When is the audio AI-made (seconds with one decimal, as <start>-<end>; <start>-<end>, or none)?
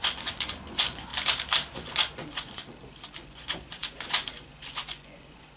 0.0-1.1; 1.7-2.6; 3.2-5.6